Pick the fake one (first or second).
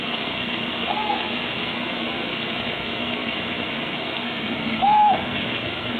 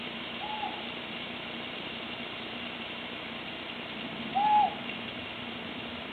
first